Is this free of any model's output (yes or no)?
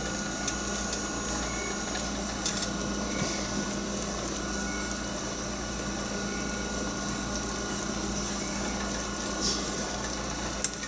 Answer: yes